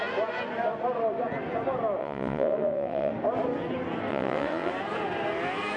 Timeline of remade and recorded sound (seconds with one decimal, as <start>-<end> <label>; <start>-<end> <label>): 0.0-2.0 recorded; 2.0-3.1 remade; 3.1-4.1 recorded; 4.1-4.7 remade; 4.7-5.8 recorded